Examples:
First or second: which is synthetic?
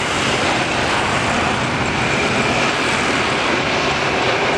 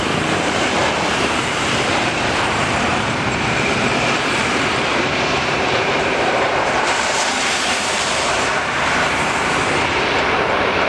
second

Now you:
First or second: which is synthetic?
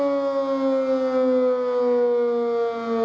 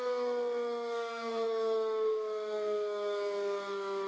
second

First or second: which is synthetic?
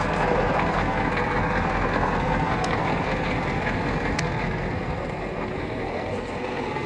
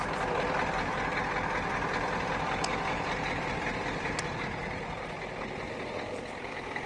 first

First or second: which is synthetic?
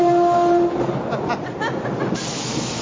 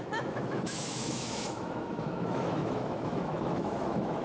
second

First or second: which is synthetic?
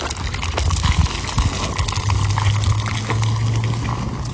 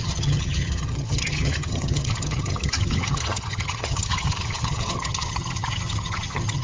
second